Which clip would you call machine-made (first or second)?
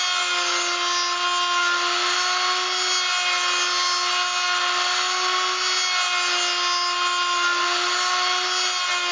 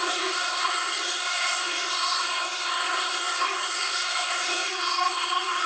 second